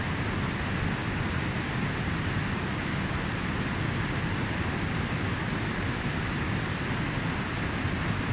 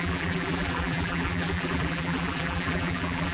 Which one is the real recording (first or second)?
first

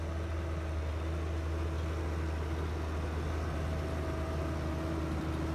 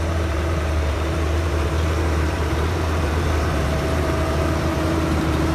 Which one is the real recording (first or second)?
first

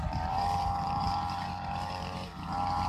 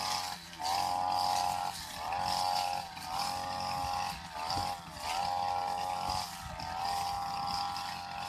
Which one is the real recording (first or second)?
second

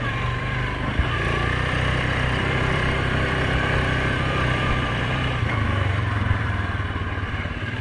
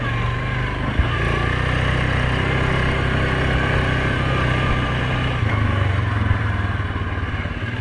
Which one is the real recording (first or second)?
second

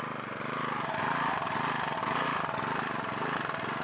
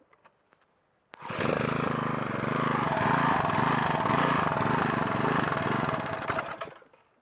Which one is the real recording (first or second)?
second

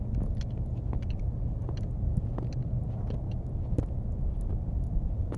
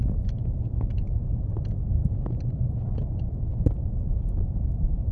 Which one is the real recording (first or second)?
first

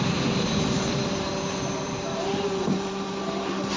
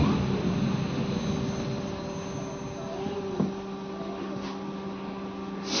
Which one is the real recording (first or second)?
second